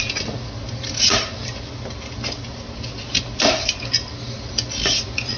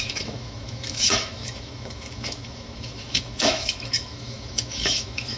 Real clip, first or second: first